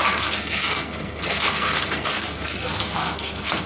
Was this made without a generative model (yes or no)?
no